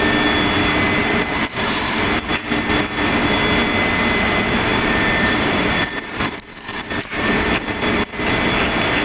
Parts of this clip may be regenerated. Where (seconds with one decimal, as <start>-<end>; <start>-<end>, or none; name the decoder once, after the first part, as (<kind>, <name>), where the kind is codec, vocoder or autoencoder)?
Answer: 1.0-1.9 (vocoder, BigVGAN v2); 4.7-7.8